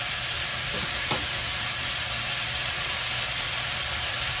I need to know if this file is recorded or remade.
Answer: remade